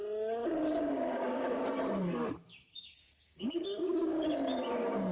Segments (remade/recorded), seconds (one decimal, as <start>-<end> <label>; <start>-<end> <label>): 0.0-0.4 recorded; 0.4-1.7 remade; 1.7-2.5 recorded; 2.5-4.3 remade; 4.3-5.1 recorded